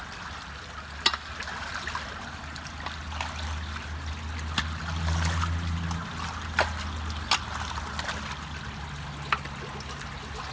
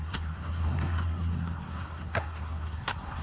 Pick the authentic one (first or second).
first